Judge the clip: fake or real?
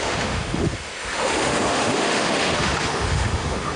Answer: fake